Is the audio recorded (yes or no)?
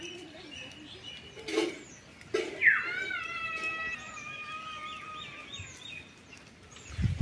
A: yes